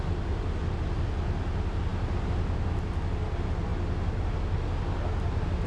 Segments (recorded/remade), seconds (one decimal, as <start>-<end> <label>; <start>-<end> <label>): 0.0-5.7 recorded

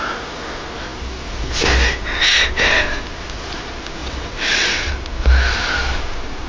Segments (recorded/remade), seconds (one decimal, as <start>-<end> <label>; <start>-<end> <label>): 0.0-4.0 recorded; 4.0-4.9 remade; 4.9-6.5 recorded

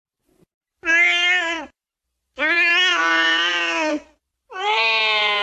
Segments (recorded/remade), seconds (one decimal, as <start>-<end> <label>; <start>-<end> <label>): 0.0-1.8 remade; 1.8-3.0 recorded; 3.0-5.4 remade

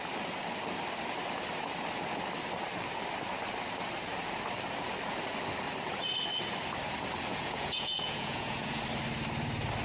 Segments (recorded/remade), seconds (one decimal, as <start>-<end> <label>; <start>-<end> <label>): 0.0-7.3 recorded; 7.3-8.8 remade; 8.8-9.8 recorded

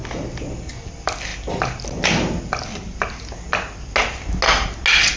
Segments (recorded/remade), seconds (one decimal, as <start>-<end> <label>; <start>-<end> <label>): 0.0-5.2 recorded

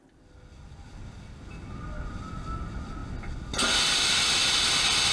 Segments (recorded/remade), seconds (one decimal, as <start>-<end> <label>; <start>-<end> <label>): 0.0-5.1 recorded

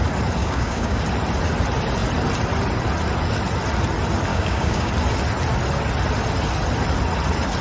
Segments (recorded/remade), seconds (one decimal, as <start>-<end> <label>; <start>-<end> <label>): 0.0-0.4 recorded; 0.4-1.0 remade; 1.0-4.3 recorded; 4.3-4.9 remade; 4.9-7.6 recorded